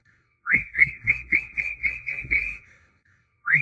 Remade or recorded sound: remade